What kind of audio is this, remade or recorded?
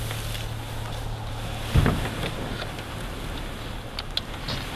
recorded